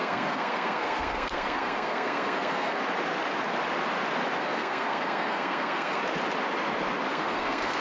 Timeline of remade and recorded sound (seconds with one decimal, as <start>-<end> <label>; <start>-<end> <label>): 0.0-2.8 remade; 2.8-4.4 recorded; 4.4-6.0 remade; 6.0-7.1 recorded; 7.1-7.8 remade